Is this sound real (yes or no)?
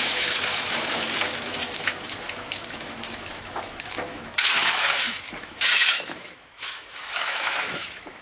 no